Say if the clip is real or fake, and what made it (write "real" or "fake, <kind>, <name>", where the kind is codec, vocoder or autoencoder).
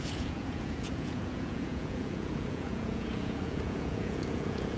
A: fake, vocoder, Vocos